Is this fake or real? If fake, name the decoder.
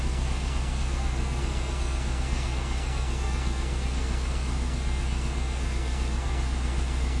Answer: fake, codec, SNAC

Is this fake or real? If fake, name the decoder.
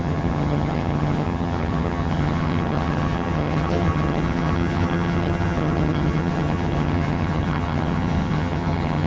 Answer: fake, vocoder, HiFi-GAN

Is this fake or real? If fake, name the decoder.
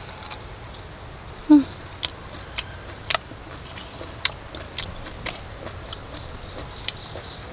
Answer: fake, vocoder, BigVGAN v2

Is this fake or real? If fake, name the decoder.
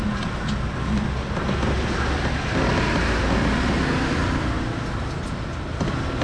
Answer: real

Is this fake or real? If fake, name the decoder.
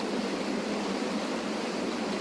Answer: real